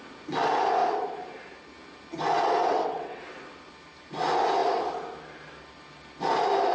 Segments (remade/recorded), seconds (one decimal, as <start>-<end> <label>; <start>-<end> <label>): 0.0-2.6 recorded; 2.6-3.2 remade; 3.2-6.7 recorded